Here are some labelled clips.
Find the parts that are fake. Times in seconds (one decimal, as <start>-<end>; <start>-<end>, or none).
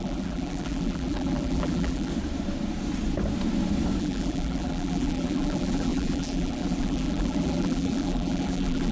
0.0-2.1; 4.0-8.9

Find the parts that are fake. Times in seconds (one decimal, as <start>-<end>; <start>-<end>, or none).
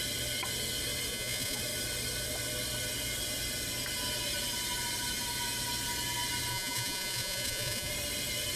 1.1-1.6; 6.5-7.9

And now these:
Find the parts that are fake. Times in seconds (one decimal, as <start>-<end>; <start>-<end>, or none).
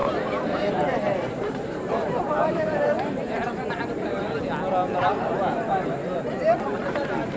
0.0-4.4; 5.1-6.8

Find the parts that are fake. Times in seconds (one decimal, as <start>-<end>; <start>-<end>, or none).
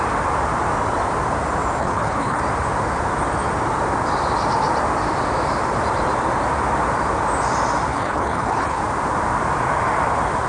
1.8-2.4; 7.9-8.8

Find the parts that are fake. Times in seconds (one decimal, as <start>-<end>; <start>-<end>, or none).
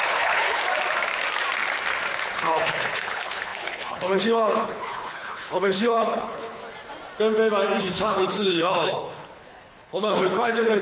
0.0-0.6; 2.2-6.6; 7.8-10.8